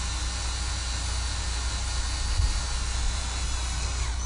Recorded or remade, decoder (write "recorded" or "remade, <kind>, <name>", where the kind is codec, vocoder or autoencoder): recorded